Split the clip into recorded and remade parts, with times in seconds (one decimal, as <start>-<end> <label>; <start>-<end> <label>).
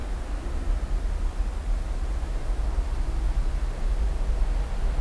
0.0-5.0 recorded